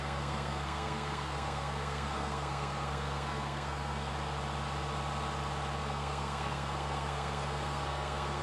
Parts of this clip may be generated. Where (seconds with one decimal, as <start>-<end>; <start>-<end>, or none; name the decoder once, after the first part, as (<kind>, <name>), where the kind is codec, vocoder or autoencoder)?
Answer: 0.0-4.1 (codec, SNAC); 5.8-8.4